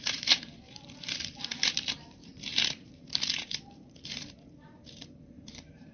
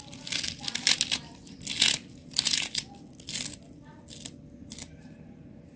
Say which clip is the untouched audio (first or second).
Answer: second